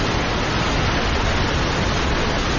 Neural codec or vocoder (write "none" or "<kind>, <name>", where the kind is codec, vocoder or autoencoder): none